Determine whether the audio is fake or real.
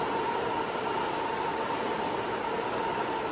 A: real